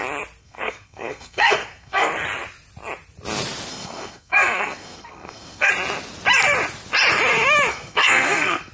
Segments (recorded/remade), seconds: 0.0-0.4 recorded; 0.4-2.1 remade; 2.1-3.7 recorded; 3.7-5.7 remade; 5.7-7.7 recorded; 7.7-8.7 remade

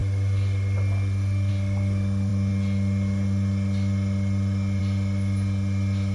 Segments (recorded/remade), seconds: 0.0-6.1 recorded

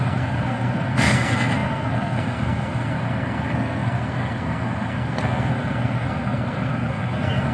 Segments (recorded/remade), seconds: 0.0-7.5 remade

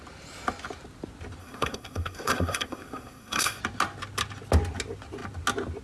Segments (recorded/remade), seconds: 0.0-1.4 recorded; 1.4-3.6 remade; 3.6-5.8 recorded

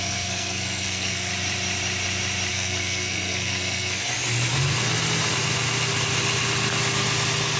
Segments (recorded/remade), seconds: 0.0-1.3 remade; 1.3-2.5 recorded; 2.5-4.1 remade; 4.1-7.6 recorded